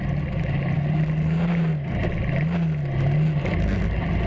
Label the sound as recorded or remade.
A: recorded